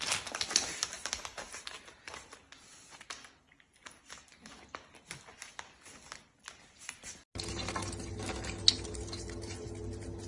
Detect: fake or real real